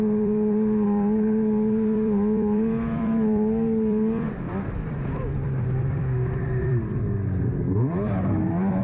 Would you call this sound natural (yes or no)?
no